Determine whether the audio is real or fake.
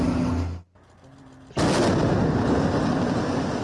real